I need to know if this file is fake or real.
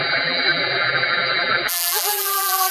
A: fake